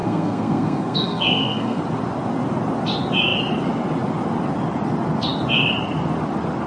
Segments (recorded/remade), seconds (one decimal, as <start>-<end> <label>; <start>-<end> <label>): 0.0-1.8 remade; 1.8-6.7 recorded